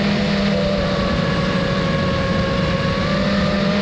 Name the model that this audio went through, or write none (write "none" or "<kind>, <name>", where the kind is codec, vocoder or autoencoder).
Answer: none